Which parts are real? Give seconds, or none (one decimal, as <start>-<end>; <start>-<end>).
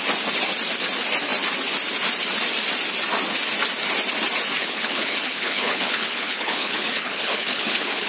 0.0-4.6